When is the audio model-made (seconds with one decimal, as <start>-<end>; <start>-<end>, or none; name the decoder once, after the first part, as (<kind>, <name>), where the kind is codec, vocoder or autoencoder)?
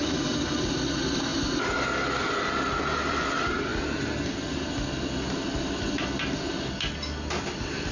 none